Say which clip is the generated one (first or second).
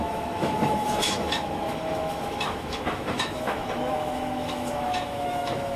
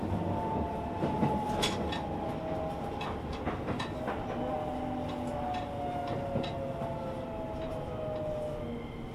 first